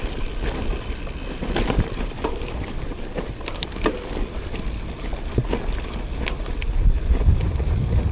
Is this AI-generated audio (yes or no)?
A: no